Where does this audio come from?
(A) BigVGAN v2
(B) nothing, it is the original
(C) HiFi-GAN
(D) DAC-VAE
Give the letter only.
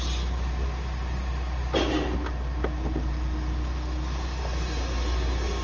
B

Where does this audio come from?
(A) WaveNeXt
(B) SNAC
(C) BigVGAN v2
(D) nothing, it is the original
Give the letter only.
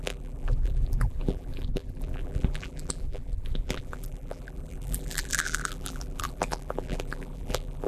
C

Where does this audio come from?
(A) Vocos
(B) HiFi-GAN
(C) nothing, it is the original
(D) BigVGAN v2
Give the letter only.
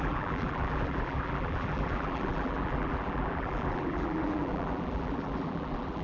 D